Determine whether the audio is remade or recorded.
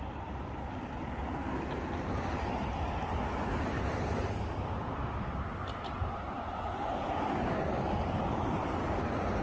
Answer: recorded